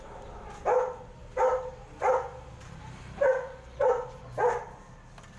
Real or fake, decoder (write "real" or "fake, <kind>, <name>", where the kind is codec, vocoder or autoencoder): real